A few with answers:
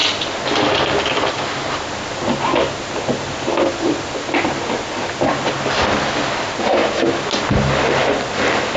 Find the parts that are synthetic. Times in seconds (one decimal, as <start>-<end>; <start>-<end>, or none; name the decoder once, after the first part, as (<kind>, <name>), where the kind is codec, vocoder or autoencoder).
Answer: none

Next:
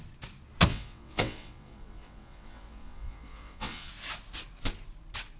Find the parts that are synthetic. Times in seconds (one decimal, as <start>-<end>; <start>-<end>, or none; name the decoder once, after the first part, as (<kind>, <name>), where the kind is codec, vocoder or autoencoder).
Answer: 0.7-3.9 (vocoder, WaveNeXt)

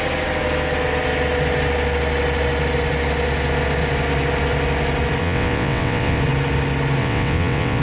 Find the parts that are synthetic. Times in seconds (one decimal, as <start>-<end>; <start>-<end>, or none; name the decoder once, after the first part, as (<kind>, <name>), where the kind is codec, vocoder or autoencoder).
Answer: 5.2-6.2 (vocoder, WaveNeXt); 7.0-7.8